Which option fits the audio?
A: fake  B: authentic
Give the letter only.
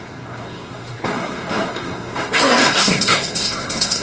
A